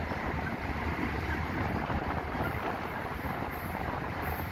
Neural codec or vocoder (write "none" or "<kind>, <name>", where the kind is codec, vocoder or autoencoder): vocoder, BigVGAN v2